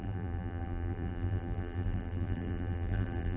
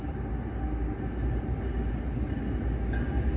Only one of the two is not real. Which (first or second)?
first